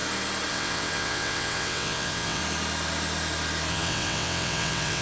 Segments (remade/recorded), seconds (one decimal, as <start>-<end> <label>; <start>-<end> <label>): 0.0-0.5 recorded; 0.5-2.4 remade; 2.4-3.7 recorded; 3.7-5.0 remade